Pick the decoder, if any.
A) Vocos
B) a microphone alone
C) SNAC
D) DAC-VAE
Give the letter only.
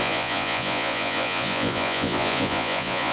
A